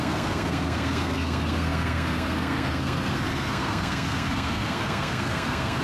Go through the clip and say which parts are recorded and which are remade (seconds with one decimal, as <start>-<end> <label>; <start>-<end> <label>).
0.0-5.8 remade